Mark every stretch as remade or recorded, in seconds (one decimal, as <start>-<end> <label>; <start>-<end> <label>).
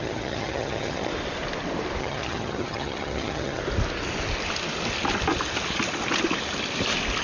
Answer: 0.0-1.1 remade; 1.1-2.0 recorded; 2.0-3.6 remade; 3.6-7.2 recorded